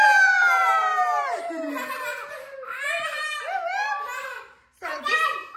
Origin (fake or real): fake